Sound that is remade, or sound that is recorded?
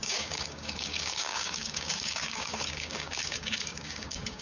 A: remade